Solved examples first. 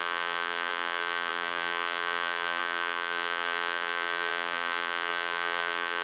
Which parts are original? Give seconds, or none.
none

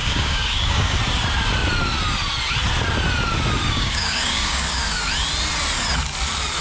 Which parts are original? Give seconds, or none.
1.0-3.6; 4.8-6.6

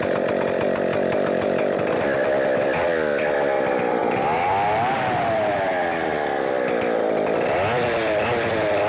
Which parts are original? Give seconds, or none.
0.0-8.9